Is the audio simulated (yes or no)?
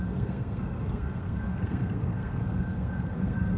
yes